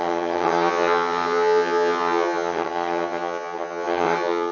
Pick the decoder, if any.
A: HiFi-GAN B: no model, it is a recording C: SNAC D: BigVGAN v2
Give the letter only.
A